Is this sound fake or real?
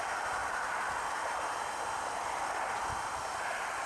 real